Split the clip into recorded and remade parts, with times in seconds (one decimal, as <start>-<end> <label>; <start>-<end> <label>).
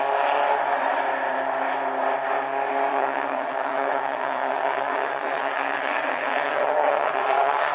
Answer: 0.0-2.9 recorded; 2.9-7.7 remade